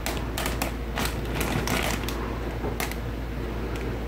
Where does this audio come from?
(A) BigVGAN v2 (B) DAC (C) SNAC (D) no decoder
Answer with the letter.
D